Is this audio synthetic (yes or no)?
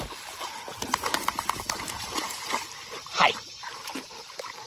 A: yes